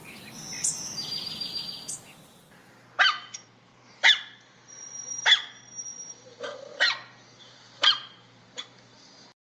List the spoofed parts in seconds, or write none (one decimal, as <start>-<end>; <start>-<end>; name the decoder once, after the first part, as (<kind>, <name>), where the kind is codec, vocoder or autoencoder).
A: 3.3-3.7 (vocoder, BigVGAN v2); 5.8-6.7; 7.3-9.5